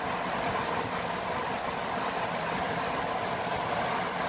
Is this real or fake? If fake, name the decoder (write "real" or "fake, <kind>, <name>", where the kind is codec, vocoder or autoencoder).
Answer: real